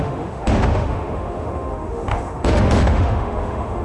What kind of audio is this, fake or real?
fake